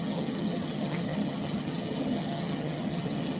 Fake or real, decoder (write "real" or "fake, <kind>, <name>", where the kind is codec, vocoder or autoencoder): fake, vocoder, HiFi-GAN